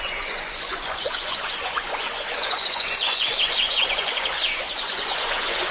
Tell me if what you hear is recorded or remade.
remade